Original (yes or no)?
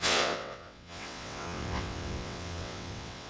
no